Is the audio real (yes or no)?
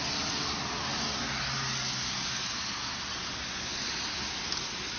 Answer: yes